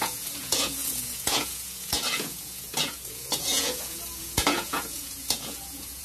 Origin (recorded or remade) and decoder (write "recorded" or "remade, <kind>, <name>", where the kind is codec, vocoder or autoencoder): remade, vocoder, Vocos